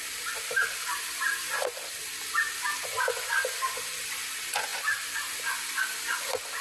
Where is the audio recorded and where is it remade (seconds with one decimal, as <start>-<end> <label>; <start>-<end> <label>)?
0.0-0.9 recorded; 0.9-1.5 remade; 1.5-6.6 recorded